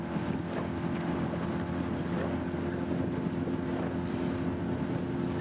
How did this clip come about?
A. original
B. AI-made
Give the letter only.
A